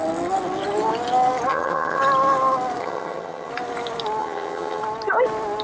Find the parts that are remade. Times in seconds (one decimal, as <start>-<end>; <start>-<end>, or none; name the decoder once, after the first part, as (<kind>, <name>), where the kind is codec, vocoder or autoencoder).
1.5-2.0 (vocoder, HiFi-GAN); 2.8-3.5; 4.2-4.8